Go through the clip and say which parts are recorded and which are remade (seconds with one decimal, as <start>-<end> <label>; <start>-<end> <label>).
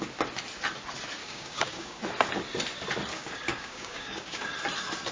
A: 0.0-1.2 recorded; 1.2-2.0 remade; 2.0-3.1 recorded; 3.1-4.4 remade; 4.4-5.1 recorded